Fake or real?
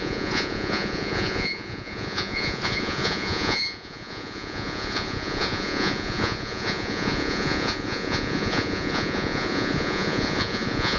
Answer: fake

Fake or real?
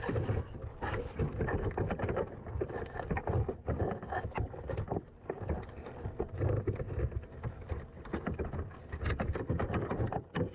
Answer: real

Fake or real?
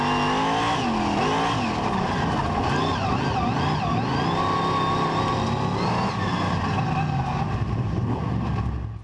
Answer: real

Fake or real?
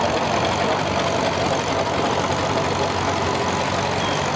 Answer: real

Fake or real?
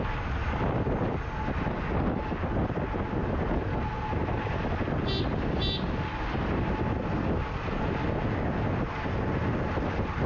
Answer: real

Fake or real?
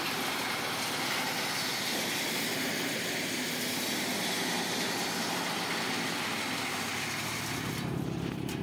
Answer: real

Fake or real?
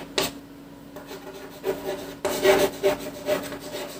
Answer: real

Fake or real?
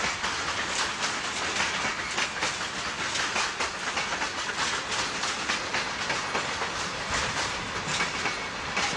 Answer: real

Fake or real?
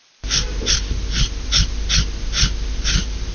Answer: real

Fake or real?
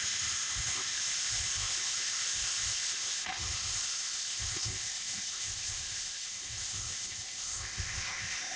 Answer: fake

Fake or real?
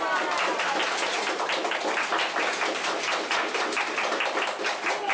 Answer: real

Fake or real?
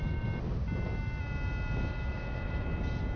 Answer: real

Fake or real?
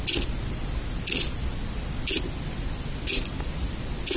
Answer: real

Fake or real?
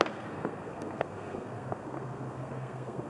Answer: fake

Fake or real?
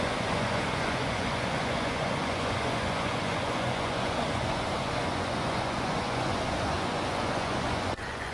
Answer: fake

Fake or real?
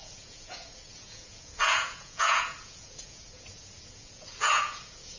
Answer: fake